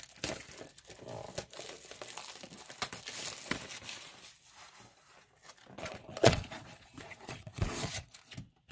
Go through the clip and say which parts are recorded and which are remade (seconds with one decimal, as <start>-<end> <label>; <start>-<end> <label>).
0.0-5.8 recorded; 5.8-7.9 remade; 7.9-8.7 recorded